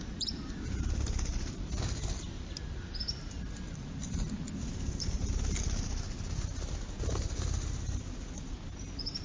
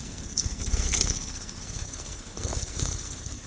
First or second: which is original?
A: first